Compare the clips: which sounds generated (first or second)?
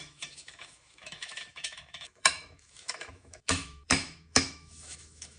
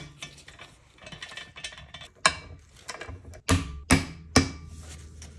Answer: first